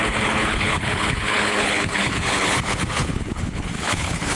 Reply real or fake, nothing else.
fake